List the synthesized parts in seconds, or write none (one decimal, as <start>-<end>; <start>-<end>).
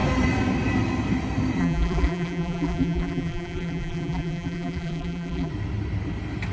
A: 1.6-5.5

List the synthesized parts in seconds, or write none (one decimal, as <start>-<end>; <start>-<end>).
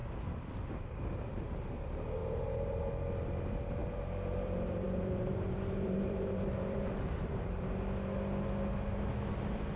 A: 2.2-2.9; 3.8-7.3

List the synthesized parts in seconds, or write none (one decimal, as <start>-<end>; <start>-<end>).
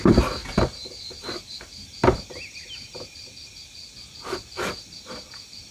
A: none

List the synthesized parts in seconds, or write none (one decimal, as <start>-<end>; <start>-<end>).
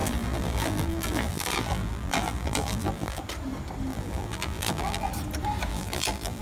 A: 0.0-3.2; 3.9-5.1; 5.7-6.4